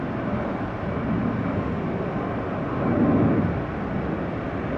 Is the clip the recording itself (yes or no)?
yes